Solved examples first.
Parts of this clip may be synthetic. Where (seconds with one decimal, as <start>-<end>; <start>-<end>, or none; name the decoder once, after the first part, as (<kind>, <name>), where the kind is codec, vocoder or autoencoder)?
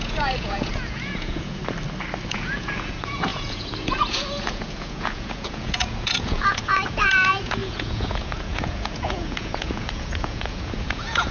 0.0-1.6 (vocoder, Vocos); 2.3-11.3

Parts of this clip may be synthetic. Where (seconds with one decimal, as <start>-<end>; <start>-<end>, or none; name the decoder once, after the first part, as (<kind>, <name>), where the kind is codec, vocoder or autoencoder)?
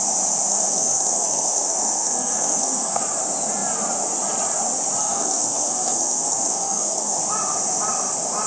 0.5-3.0 (codec, SNAC); 5.0-7.2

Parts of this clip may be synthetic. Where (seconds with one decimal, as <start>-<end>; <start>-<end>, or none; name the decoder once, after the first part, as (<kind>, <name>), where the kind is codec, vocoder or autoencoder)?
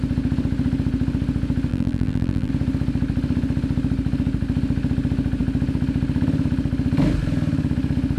1.7-2.5 (vocoder, BigVGAN v2)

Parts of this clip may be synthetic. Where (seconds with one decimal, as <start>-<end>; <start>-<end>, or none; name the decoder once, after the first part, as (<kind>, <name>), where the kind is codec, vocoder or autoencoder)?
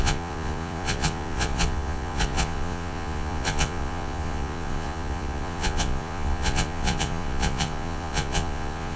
0.0-9.0 (vocoder, Vocos)